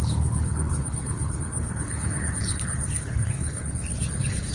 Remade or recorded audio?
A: remade